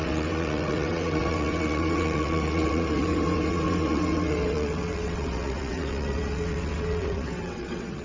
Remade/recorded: remade